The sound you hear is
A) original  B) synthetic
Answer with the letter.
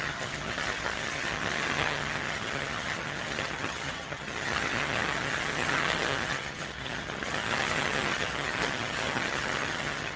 B